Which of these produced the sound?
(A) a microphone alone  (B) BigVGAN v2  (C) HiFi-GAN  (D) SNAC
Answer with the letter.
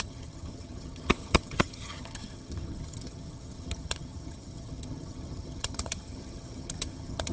C